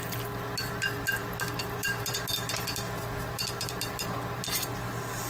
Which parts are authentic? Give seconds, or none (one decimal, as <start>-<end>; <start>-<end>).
0.0-5.3